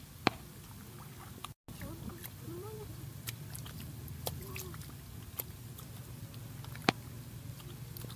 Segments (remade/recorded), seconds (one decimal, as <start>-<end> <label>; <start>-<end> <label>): 0.0-2.2 recorded; 2.2-2.8 remade; 2.8-8.2 recorded